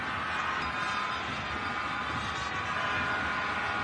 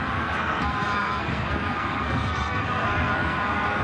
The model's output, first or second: second